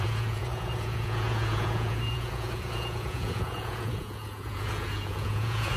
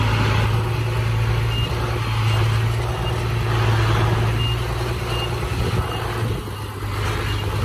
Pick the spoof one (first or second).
first